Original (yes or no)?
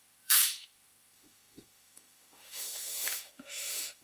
no